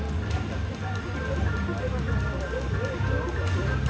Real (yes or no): yes